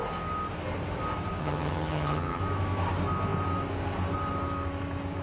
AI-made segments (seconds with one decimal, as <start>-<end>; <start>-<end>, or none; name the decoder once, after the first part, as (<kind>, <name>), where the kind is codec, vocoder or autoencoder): 1.4-2.4 (vocoder, HiFi-GAN)